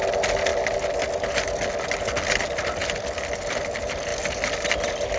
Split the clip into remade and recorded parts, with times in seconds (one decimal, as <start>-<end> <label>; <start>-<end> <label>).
0.0-5.2 recorded